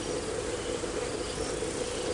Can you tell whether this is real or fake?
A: real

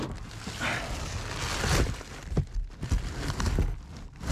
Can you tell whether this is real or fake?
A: real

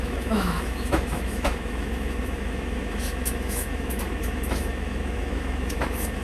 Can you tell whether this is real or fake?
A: fake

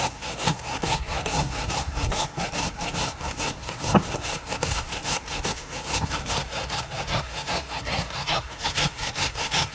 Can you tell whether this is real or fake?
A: fake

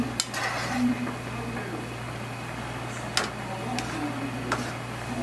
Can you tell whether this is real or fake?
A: real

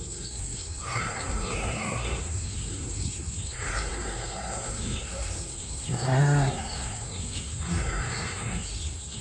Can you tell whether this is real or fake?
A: fake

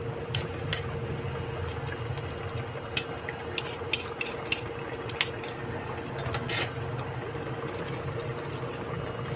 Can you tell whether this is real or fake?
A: real